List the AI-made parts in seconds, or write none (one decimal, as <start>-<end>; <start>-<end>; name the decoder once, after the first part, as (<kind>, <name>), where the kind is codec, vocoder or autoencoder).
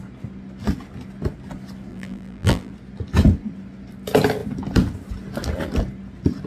1.9-2.7 (vocoder, BigVGAN v2)